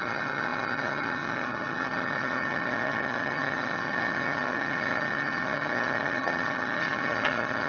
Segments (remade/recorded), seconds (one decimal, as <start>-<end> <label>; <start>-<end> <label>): 0.0-7.7 remade